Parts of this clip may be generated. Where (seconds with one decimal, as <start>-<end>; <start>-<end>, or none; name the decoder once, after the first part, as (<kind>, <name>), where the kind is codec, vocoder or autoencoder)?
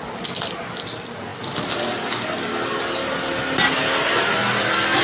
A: none